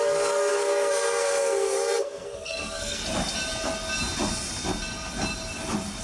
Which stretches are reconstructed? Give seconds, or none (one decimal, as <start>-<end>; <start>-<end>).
0.0-3.0